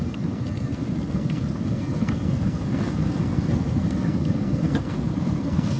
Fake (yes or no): yes